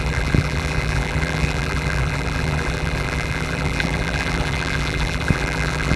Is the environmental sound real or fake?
fake